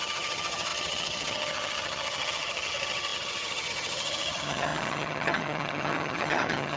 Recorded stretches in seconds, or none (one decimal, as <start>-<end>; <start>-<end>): none